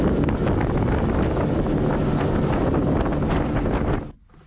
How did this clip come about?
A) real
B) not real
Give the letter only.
A